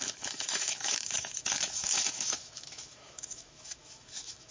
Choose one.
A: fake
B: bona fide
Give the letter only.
A